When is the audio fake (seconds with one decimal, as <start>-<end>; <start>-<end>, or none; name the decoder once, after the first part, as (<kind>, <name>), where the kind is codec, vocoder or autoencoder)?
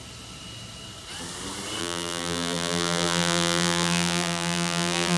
1.8-5.2 (vocoder, BigVGAN v2)